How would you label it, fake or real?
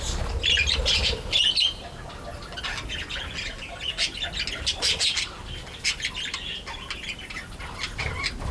real